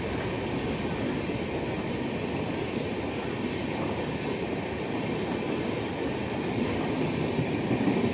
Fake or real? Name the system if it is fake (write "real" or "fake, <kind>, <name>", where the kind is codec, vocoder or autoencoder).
fake, vocoder, BigVGAN v2